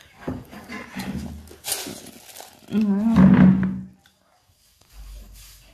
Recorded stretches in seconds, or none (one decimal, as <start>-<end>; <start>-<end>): 0.7-4.1